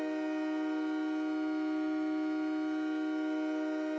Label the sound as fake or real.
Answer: real